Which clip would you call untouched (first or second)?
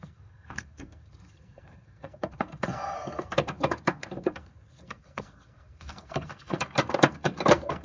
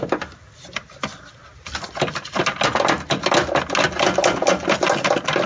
second